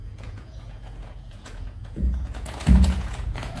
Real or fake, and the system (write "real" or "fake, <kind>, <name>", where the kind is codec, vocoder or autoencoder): fake, vocoder, Vocos